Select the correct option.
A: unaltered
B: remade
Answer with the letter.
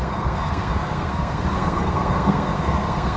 B